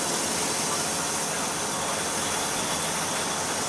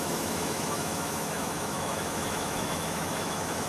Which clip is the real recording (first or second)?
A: first